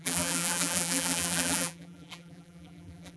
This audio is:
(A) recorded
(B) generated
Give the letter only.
B